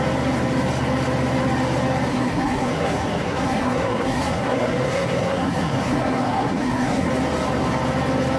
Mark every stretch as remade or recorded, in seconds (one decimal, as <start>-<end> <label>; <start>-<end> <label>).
0.0-2.1 recorded; 2.1-7.1 remade; 7.1-8.4 recorded